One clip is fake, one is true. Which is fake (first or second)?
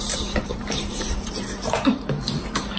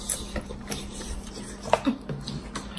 first